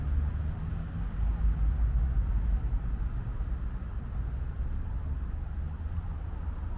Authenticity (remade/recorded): recorded